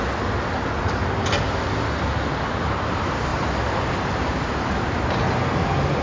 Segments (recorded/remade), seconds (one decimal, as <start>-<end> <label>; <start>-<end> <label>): 0.0-6.0 recorded